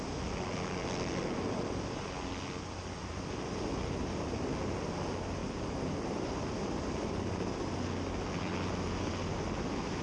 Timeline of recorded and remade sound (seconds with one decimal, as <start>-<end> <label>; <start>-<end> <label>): 0.0-3.0 recorded; 3.0-4.5 remade; 4.5-5.4 recorded; 5.4-7.1 remade; 7.1-10.0 recorded